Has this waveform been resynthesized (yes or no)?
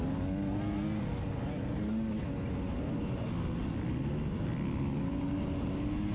no